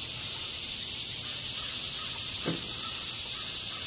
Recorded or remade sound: recorded